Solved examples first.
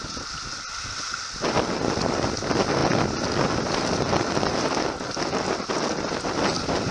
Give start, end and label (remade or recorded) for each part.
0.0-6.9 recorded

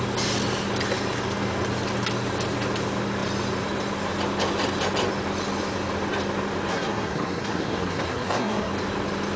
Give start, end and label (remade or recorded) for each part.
0.0-6.7 recorded; 6.7-8.7 remade; 8.7-9.4 recorded

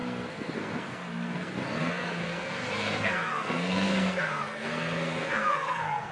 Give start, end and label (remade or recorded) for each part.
0.0-6.1 remade